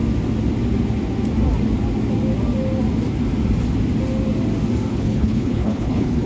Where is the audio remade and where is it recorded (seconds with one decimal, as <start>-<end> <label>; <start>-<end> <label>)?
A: 0.0-4.9 recorded; 4.9-6.3 remade